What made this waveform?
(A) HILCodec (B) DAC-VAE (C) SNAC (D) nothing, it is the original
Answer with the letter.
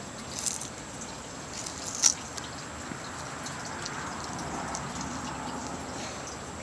D